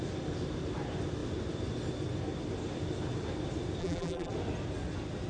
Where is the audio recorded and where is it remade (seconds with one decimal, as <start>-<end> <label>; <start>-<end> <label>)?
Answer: 0.0-3.8 recorded; 3.8-4.3 remade; 4.3-5.3 recorded